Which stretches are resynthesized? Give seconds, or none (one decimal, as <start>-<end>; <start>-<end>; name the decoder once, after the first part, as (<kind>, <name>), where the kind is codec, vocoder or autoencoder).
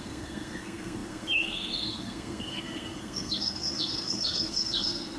0.0-5.2 (codec, SNAC)